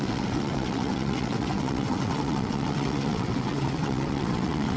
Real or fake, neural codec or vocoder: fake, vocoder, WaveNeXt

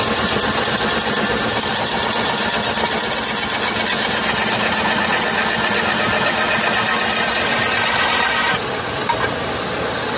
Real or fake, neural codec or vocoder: real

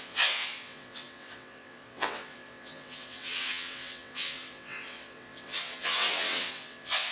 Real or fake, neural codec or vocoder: fake, vocoder, WaveNeXt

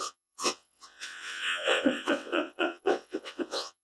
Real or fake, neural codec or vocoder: fake, vocoder, WaveNeXt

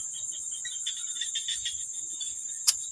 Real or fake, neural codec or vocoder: real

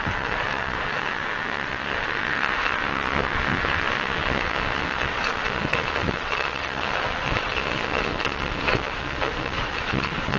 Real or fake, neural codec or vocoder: fake, vocoder, WaveNeXt